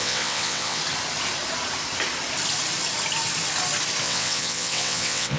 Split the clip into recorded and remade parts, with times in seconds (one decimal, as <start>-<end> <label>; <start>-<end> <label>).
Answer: 0.0-0.8 remade; 0.8-4.0 recorded; 4.0-5.4 remade